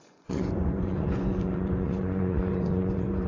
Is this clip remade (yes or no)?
yes